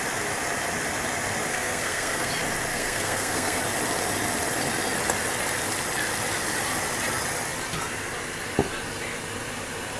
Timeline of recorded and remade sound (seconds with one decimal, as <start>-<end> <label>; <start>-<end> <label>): 0.0-1.5 recorded; 1.5-2.3 remade; 2.3-2.7 recorded; 2.7-3.6 remade; 3.6-10.0 recorded